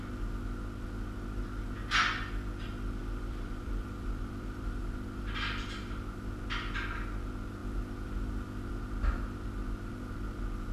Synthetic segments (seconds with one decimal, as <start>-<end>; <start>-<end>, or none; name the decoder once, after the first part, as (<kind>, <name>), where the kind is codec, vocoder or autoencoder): 3.0-4.8 (vocoder, BigVGAN v2)